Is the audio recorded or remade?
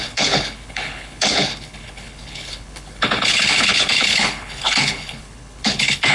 remade